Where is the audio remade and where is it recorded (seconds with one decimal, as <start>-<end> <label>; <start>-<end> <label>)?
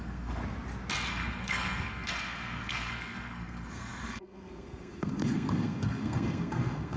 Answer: 0.0-0.4 remade; 0.4-1.1 recorded; 1.1-7.0 remade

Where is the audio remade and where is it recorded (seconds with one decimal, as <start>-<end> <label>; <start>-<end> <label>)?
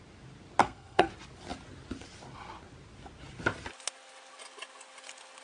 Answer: 0.0-0.6 recorded; 0.6-1.1 remade; 1.1-5.4 recorded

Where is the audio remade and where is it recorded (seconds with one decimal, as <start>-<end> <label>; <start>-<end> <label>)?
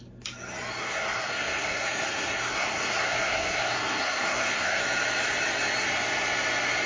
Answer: 0.0-0.7 recorded; 0.7-4.8 remade; 4.8-6.9 recorded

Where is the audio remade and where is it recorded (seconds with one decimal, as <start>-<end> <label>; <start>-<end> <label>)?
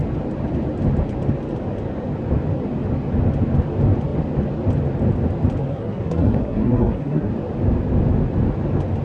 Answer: 0.0-5.7 recorded; 5.7-7.3 remade; 7.3-9.0 recorded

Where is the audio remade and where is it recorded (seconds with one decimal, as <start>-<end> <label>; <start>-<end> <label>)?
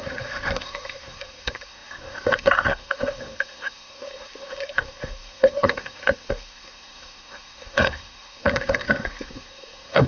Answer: 0.0-10.1 remade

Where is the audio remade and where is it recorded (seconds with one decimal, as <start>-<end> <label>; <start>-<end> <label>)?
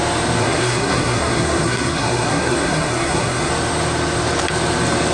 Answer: 0.0-0.4 recorded; 0.4-3.5 remade; 3.5-5.1 recorded